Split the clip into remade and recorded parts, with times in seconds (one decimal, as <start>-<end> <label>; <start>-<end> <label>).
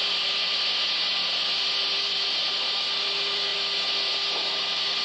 0.0-5.0 recorded